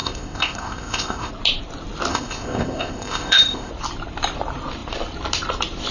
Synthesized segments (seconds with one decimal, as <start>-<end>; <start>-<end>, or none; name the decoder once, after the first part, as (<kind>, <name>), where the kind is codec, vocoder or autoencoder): 0.0-1.3 (codec, ZipCodec); 2.1-3.7